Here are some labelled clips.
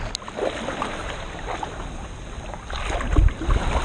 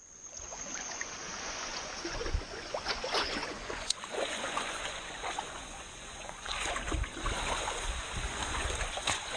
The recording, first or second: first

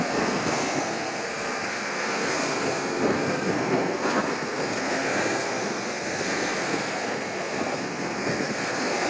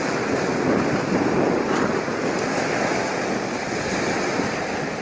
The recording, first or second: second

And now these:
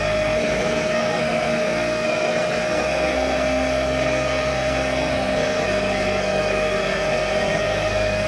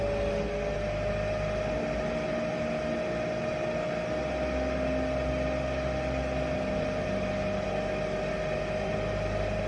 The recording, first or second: second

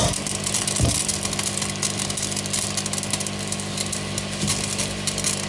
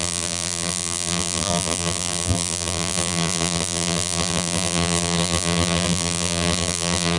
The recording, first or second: first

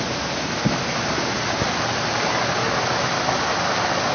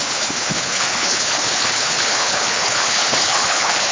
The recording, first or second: first